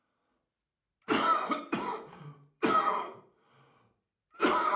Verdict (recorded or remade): remade